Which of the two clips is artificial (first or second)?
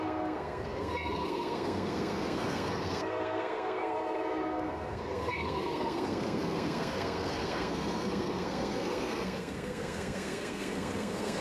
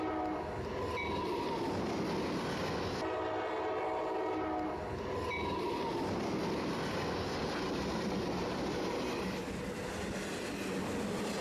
first